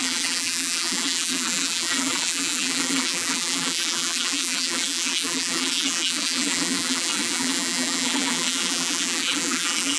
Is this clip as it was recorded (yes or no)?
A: no